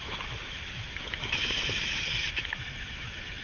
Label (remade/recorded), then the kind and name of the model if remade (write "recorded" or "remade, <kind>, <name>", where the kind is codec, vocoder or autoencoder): remade, autoencoder, DAC-VAE